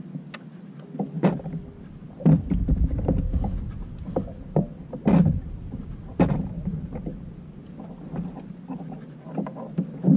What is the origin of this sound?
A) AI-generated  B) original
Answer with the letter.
B